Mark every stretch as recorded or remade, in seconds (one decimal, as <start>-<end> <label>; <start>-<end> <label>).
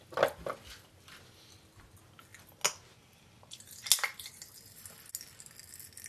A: 0.0-6.1 recorded